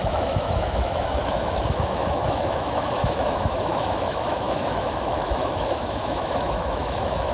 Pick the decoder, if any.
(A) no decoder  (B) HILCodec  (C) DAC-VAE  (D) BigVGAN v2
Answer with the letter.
C